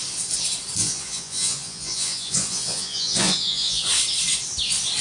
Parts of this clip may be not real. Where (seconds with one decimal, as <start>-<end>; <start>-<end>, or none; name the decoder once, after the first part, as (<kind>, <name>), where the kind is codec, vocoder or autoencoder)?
0.8-3.8 (vocoder, Vocos)